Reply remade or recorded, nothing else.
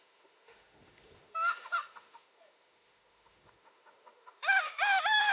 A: remade